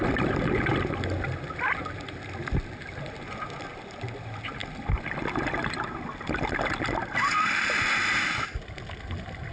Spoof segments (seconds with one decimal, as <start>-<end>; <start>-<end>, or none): none